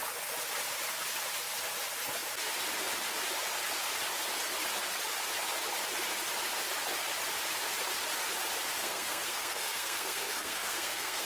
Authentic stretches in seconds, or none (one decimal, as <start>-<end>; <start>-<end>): 0.0-8.8